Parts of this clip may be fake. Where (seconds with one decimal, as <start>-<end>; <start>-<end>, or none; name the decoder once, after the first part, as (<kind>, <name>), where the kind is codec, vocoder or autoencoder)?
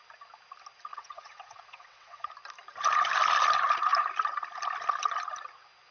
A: 0.9-2.3 (vocoder, WaveNeXt)